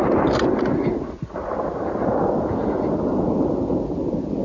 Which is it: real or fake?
real